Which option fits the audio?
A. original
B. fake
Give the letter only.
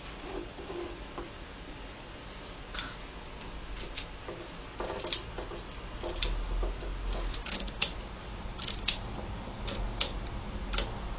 A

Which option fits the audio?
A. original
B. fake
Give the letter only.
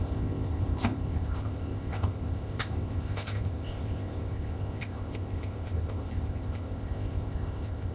B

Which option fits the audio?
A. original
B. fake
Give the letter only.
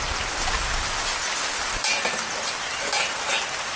A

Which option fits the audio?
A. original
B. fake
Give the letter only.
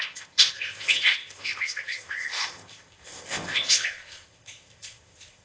B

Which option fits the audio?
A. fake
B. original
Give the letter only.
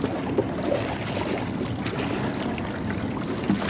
B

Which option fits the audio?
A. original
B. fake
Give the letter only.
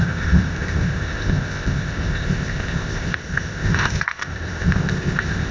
B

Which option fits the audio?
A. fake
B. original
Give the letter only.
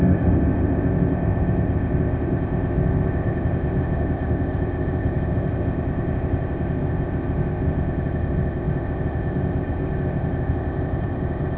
A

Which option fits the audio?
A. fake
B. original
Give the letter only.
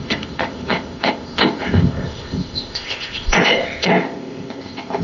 A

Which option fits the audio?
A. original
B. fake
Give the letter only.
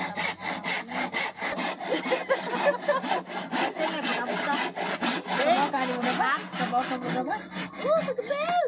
A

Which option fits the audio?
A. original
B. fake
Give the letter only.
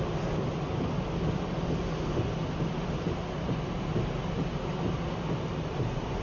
A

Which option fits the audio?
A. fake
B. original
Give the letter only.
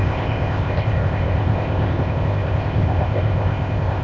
A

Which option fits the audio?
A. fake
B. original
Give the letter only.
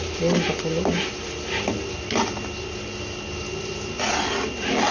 B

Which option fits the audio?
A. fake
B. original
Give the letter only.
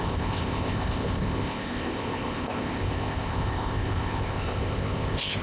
A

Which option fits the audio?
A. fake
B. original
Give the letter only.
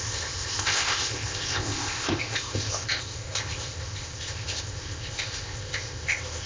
A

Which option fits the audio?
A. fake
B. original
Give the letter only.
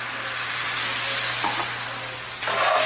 B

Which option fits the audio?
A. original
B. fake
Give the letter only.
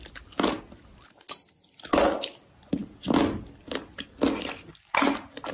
A